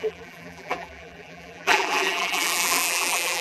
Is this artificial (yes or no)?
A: yes